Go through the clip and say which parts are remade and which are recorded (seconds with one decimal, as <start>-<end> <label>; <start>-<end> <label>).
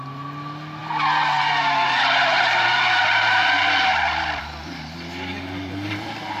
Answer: 0.0-5.3 recorded; 5.3-5.9 remade; 5.9-6.4 recorded